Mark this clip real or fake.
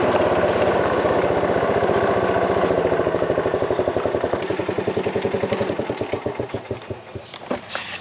real